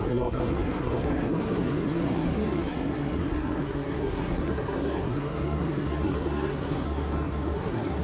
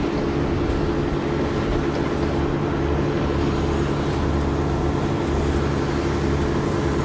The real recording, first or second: second